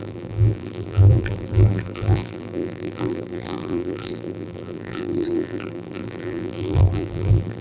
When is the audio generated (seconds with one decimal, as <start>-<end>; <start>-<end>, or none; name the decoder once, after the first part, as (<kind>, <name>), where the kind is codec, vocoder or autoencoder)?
0.0-7.6 (vocoder, BigVGAN v2)